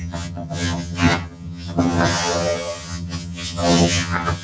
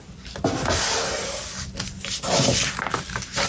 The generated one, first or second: first